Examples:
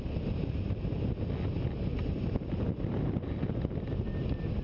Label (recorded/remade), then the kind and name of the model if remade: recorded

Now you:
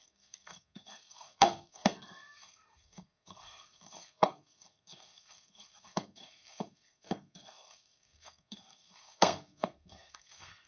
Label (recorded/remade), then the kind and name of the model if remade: remade, codec, SNAC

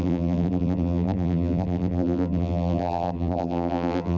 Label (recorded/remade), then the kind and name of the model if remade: remade, vocoder, BigVGAN v2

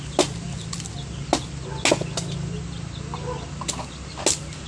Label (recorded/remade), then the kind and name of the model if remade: recorded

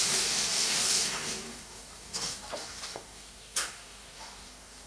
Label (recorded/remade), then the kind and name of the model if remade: remade, codec, DAC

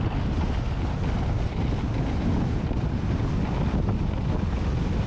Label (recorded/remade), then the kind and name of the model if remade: recorded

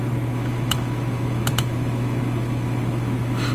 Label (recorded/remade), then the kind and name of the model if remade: remade, autoencoder, DAC-VAE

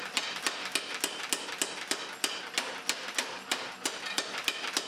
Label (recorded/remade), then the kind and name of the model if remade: recorded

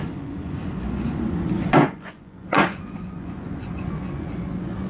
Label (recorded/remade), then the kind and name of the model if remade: remade, vocoder, Vocos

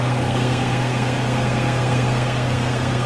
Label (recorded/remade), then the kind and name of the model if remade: remade, codec, SNAC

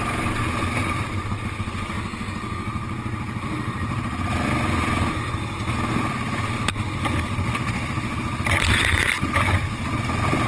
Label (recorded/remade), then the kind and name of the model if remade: recorded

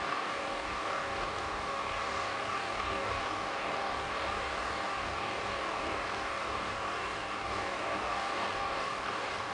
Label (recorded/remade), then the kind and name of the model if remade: remade, codec, DAC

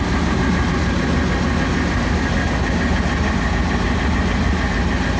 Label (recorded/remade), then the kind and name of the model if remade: recorded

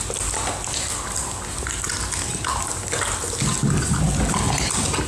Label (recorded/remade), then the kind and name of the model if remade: recorded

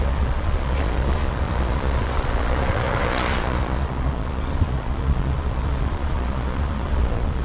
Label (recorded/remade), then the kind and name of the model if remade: remade, vocoder, Vocos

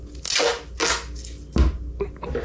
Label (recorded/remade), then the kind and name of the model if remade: recorded